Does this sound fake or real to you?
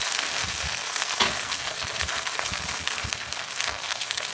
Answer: fake